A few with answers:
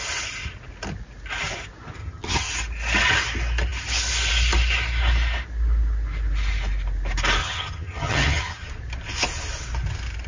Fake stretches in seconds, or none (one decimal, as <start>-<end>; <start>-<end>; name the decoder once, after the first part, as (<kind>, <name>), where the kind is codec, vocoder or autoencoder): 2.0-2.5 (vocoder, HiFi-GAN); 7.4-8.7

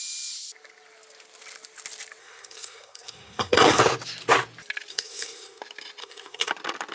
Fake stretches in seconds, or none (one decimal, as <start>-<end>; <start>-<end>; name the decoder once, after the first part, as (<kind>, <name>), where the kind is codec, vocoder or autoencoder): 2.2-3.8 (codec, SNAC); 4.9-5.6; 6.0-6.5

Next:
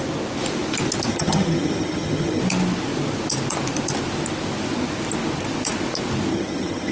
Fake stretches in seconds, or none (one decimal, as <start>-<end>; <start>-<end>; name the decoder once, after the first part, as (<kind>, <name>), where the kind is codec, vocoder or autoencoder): 1.1-2.4 (vocoder, HiFi-GAN); 6.3-6.9